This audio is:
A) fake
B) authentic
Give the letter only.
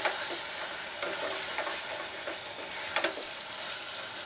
B